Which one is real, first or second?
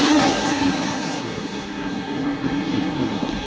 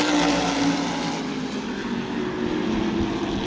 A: second